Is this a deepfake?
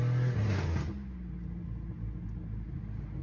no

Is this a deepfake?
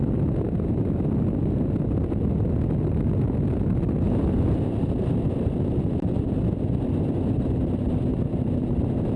no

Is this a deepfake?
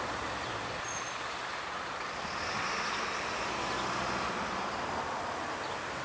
no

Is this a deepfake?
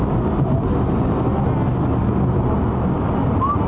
no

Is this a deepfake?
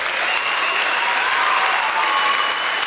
no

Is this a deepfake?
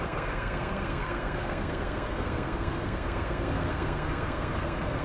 yes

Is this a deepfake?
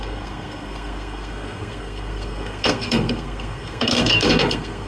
yes